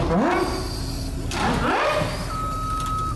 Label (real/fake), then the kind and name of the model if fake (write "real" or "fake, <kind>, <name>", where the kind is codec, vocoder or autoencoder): real